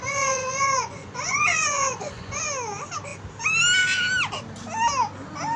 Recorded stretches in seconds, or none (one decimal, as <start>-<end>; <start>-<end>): 2.5-5.6